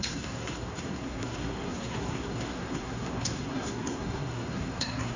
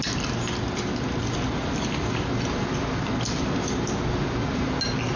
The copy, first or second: first